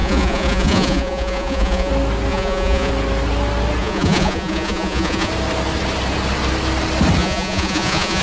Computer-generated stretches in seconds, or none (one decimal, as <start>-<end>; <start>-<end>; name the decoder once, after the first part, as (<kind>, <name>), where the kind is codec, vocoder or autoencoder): 0.0-1.9 (vocoder, Vocos); 2.3-2.9; 3.8-5.3; 7.2-8.2